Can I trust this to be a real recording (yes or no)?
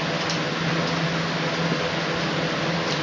yes